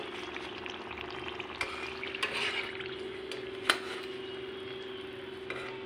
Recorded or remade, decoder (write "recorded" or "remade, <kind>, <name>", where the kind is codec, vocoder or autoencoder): recorded